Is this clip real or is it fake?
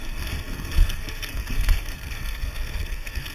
fake